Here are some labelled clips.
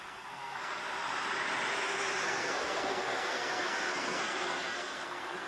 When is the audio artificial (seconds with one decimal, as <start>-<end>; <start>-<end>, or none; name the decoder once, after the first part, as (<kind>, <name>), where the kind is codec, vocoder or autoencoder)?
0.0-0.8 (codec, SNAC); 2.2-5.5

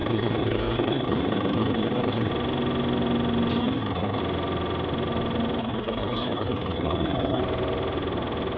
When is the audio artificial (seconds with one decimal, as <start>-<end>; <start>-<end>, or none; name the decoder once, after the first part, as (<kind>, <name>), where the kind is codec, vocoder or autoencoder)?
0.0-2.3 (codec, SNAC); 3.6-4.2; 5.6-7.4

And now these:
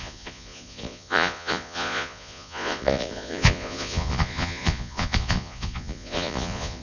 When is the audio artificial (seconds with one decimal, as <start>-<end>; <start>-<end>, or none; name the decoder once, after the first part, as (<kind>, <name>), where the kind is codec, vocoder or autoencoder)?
0.0-6.8 (vocoder, Vocos)

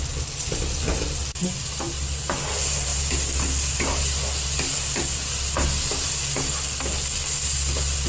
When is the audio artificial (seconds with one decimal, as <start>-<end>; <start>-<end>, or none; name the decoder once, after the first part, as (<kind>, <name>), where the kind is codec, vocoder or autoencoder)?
none